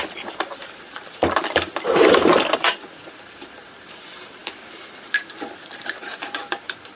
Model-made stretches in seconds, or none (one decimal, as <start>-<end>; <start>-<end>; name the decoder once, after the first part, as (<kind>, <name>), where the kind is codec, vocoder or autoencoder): 0.0-7.0 (vocoder, BigVGAN v2)